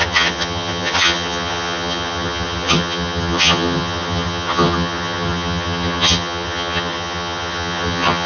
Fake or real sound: fake